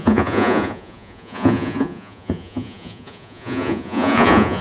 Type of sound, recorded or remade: remade